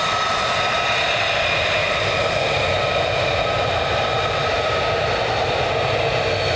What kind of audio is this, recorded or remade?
recorded